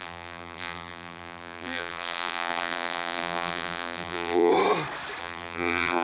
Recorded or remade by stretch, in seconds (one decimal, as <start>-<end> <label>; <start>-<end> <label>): 0.0-4.5 remade; 4.5-5.2 recorded; 5.2-6.0 remade